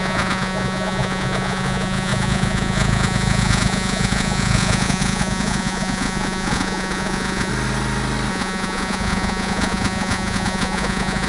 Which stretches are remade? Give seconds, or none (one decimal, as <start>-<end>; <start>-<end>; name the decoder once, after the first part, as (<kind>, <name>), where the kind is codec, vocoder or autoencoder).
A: 0.0-7.5 (vocoder, Vocos); 8.3-11.3

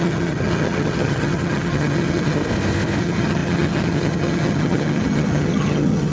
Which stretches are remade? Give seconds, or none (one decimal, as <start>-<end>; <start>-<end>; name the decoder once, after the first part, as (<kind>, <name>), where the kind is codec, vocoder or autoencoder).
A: 0.0-2.4 (vocoder, HiFi-GAN); 3.0-6.1

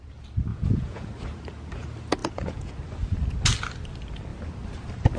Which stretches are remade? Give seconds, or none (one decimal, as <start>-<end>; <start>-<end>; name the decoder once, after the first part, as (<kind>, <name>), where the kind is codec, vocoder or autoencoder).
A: 0.5-1.1 (vocoder, Vocos); 2.2-2.7

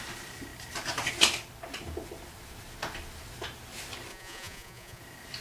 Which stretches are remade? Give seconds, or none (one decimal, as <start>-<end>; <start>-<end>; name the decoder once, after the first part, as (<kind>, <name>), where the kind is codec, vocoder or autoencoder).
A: 4.1-5.0 (vocoder, Vocos)

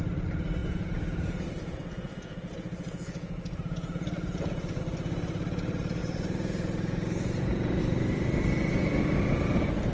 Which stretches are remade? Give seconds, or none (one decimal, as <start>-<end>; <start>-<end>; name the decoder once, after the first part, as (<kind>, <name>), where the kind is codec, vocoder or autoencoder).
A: 0.6-4.8 (vocoder, Vocos); 6.0-7.8

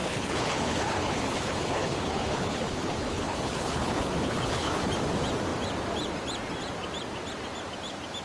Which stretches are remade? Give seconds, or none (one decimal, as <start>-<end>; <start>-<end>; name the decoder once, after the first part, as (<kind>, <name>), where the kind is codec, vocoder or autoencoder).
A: 0.0-4.8 (codec, HILCodec)

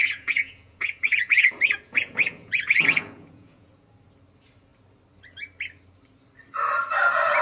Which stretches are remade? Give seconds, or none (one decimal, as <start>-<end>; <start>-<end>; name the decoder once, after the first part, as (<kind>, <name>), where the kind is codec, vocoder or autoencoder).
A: 0.0-3.7 (vocoder, Vocos)

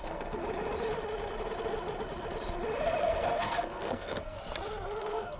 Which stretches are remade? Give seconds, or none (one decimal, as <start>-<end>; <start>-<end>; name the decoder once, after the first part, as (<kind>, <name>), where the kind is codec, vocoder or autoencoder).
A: 0.0-0.4 (codec, SNAC); 3.0-4.4; 5.0-5.4